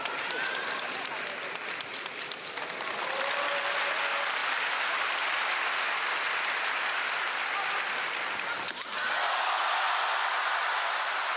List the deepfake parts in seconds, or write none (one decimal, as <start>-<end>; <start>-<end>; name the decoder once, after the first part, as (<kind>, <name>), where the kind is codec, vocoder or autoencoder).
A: none